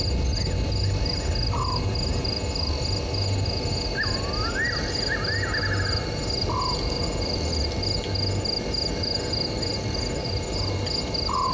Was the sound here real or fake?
real